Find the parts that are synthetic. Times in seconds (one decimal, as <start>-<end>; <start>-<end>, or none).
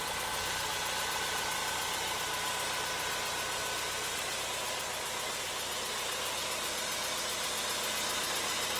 none